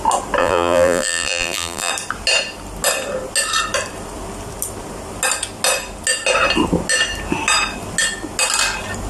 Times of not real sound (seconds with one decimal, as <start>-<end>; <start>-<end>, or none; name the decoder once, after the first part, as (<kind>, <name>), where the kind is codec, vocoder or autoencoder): 0.4-1.9 (vocoder, BigVGAN v2)